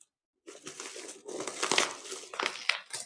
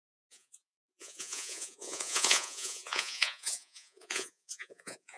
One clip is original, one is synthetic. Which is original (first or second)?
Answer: first